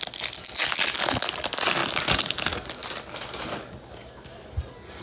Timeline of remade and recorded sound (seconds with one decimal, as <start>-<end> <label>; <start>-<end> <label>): 0.0-5.0 recorded